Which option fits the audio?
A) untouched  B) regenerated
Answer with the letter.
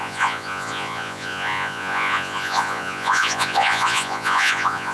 B